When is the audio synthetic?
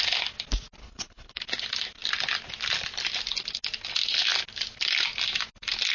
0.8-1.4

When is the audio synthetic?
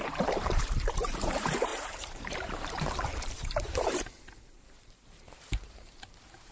0.0-6.5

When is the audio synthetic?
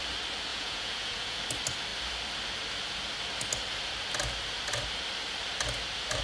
0.5-1.4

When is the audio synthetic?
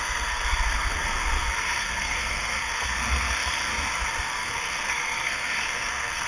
0.0-3.7; 4.2-6.3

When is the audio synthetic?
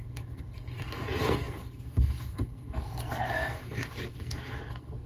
0.0-5.1